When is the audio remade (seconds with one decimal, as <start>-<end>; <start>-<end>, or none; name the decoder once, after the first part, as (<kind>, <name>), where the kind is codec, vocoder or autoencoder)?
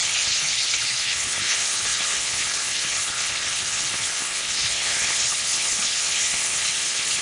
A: 0.0-7.2 (codec, HILCodec)